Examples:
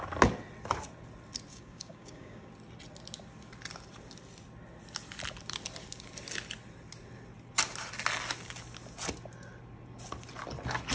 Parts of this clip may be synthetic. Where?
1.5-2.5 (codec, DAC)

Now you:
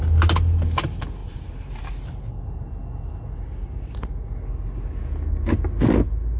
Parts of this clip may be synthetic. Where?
1.2-2.3 (vocoder, BigVGAN v2)

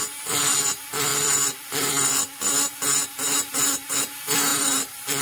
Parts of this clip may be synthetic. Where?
1.1-2.1 (vocoder, BigVGAN v2); 3.0-3.6; 4.5-5.2

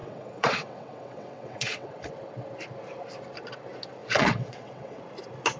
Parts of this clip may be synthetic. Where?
0.0-2.1 (vocoder, WaveNeXt); 4.0-5.0

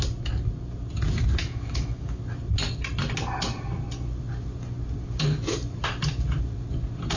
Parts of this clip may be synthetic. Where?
1.4-2.2 (autoencoder, DAC-VAE)

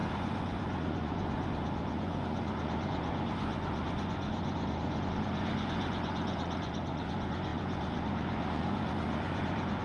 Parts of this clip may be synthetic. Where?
0.0-9.8 (vocoder, Vocos)